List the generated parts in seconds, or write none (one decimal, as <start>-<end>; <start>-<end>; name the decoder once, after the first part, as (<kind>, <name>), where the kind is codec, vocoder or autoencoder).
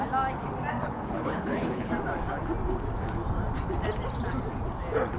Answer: 0.8-1.9 (codec, HILCodec)